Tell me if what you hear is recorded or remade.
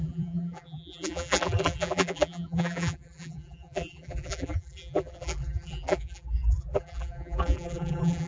remade